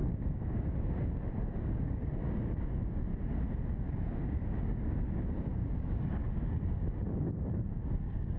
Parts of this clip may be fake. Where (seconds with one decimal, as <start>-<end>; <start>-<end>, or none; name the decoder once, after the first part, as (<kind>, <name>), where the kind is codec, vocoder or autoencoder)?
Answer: 0.0-3.1 (codec, DAC); 3.9-8.4

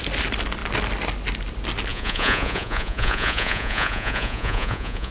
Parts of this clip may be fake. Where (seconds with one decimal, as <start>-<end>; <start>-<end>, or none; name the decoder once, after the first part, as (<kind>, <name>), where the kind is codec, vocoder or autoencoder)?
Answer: 1.9-5.1 (vocoder, Vocos)